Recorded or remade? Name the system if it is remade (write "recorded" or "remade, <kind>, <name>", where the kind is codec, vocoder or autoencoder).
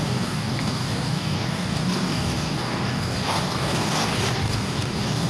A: remade, codec, DAC